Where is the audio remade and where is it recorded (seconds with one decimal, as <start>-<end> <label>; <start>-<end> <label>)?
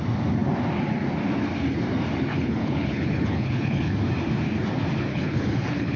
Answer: 0.0-2.3 recorded; 2.3-3.9 remade; 3.9-5.1 recorded; 5.1-6.0 remade